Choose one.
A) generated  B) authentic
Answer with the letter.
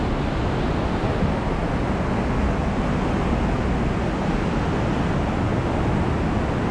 B